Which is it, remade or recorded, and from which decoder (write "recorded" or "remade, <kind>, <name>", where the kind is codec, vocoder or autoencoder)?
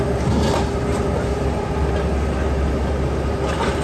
recorded